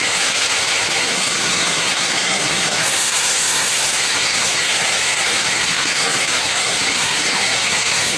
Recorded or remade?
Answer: remade